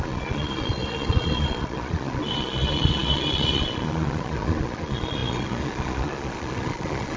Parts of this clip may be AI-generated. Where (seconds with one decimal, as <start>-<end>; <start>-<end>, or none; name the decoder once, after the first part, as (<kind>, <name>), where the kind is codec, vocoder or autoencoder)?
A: 0.0-7.2 (vocoder, Vocos)